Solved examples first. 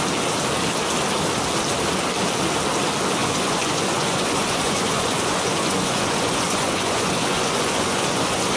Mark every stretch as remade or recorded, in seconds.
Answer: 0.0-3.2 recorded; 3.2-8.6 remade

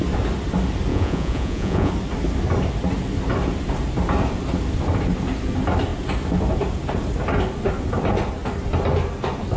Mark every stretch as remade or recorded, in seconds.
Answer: 0.0-0.9 recorded; 0.9-1.9 remade; 1.9-9.6 recorded

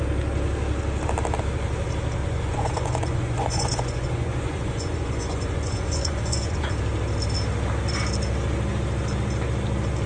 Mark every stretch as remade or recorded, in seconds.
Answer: 0.0-2.2 recorded; 2.2-6.7 remade; 6.7-10.1 recorded

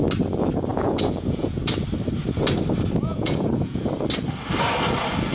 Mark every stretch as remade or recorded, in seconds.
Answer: 0.0-0.7 recorded; 0.7-1.6 remade; 1.6-3.1 recorded; 3.1-3.8 remade; 3.8-5.3 recorded

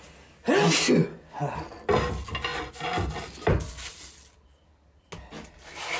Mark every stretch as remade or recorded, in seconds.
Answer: 0.0-6.0 recorded

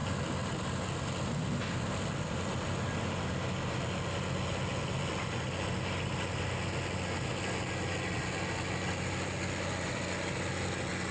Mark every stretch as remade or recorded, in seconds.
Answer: 0.0-11.1 recorded

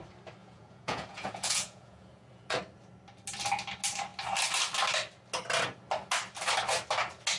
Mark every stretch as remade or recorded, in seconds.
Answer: 0.0-0.4 recorded; 0.4-2.6 remade; 2.6-7.4 recorded

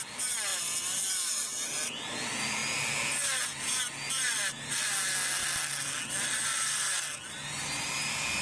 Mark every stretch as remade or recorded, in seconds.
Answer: 0.0-8.4 recorded